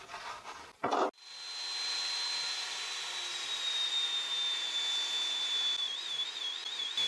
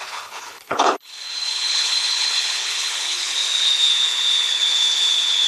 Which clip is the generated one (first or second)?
second